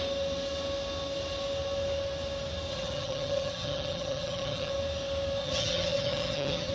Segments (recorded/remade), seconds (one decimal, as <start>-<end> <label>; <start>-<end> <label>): 0.0-2.7 recorded; 2.7-4.7 remade; 4.7-5.4 recorded; 5.4-6.7 remade